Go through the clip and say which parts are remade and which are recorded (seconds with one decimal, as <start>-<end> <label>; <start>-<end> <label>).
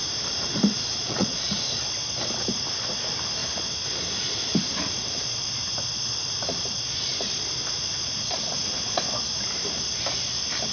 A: 0.0-0.9 recorded; 0.9-1.5 remade; 1.5-10.7 recorded